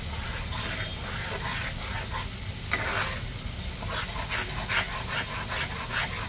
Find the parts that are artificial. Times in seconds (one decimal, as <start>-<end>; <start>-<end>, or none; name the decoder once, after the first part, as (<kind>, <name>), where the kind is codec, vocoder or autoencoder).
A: none